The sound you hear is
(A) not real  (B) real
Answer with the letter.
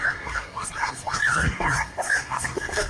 A